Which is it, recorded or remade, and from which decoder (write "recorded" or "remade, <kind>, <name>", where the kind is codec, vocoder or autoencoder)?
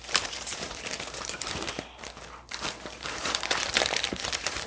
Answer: remade, vocoder, BigVGAN v2